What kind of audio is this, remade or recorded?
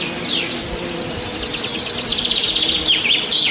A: recorded